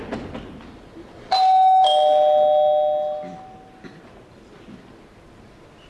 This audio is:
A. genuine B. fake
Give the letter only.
A